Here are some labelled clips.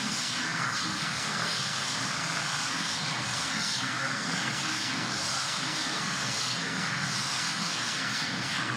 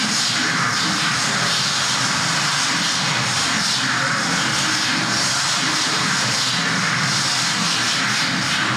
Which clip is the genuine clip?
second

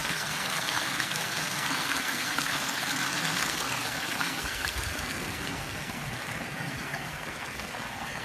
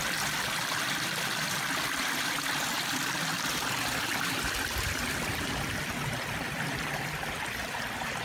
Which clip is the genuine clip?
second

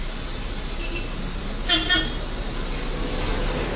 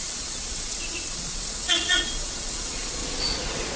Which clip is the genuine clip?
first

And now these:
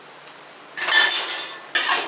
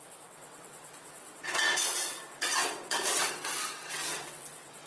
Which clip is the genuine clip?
first